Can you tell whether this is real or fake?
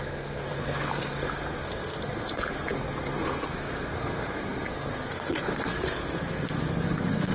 fake